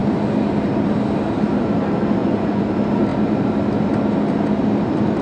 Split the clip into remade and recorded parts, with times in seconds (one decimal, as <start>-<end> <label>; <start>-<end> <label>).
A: 0.0-2.2 recorded; 2.2-2.7 remade; 2.7-5.2 recorded